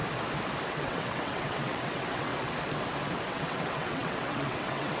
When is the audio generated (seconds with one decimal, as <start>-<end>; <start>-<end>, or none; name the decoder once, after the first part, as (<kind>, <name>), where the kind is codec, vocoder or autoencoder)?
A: 0.7-2.3 (vocoder, WaveNeXt); 3.3-5.0